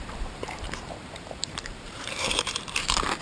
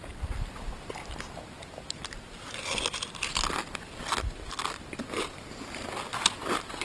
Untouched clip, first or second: second